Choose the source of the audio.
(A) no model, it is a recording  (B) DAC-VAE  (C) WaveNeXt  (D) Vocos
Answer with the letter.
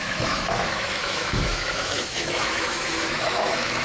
B